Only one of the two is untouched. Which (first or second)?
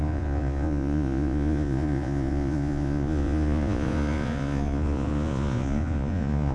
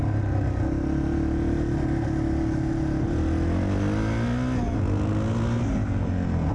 second